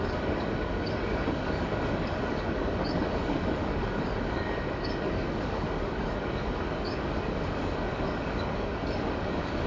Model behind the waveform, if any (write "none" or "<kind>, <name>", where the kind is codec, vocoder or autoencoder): codec, DAC